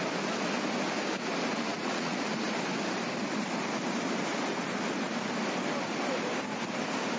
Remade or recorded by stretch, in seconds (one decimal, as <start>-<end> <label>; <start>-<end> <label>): 0.0-1.7 recorded; 1.7-2.2 remade; 2.2-7.2 recorded